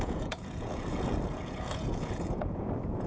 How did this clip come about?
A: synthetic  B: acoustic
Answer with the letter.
A